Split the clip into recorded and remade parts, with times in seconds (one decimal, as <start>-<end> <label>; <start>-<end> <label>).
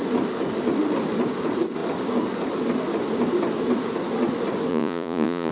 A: 0.0-4.7 recorded; 4.7-5.5 remade